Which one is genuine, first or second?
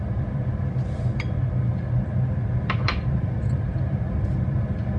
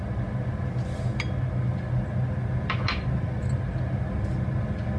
second